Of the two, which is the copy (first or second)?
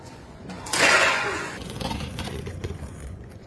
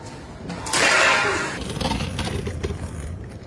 first